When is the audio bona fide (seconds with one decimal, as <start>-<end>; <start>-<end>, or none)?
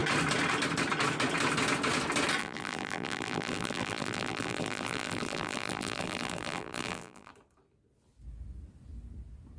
0.0-2.4; 7.3-9.6